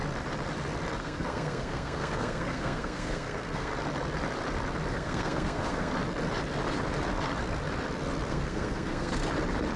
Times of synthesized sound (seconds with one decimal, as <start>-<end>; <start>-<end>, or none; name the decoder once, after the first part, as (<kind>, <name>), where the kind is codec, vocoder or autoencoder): 1.0-3.7 (codec, SNAC); 4.9-5.9; 8.3-9.2